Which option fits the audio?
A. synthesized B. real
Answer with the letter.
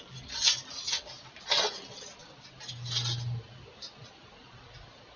B